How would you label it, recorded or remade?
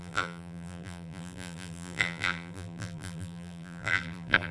remade